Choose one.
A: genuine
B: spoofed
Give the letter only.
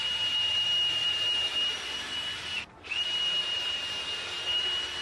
B